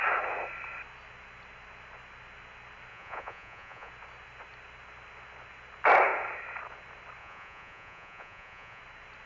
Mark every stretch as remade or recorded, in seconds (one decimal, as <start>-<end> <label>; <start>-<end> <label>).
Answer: 0.0-2.9 recorded; 2.9-3.9 remade; 3.9-7.2 recorded; 7.2-8.8 remade; 8.8-9.3 recorded